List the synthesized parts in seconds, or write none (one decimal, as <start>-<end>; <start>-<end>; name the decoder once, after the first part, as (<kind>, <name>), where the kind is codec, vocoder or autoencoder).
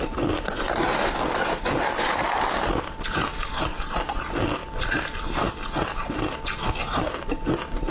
none